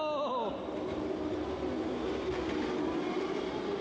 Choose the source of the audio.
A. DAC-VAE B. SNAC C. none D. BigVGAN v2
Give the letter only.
C